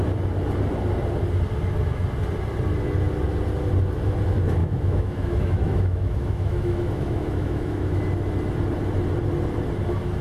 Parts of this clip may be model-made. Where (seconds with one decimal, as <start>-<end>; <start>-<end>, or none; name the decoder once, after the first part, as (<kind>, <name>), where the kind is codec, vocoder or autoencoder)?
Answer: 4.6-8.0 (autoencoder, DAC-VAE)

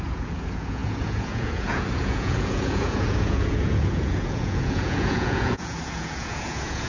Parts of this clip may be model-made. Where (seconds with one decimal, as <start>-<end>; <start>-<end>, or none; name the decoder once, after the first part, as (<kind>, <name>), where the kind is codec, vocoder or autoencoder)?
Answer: 0.0-6.9 (vocoder, Vocos)

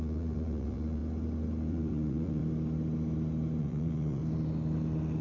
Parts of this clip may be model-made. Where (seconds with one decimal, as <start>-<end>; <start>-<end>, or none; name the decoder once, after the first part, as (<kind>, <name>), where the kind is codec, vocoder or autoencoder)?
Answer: 0.0-1.0 (vocoder, Vocos); 1.7-2.4; 3.6-4.2

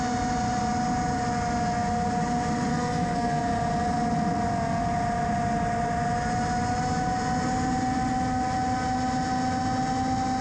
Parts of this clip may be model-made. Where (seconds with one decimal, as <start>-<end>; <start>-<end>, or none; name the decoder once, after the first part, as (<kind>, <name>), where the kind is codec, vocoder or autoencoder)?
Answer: 2.7-3.4 (codec, SNAC)

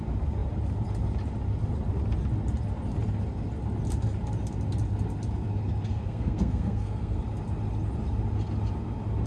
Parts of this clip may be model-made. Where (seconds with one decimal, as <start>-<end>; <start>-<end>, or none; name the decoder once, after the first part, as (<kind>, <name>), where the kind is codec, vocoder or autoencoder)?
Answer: 5.9-7.2 (codec, SNAC)